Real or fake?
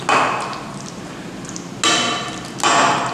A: real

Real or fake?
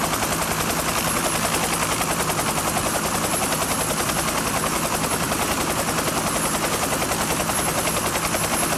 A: real